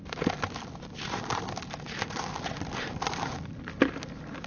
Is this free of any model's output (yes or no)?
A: yes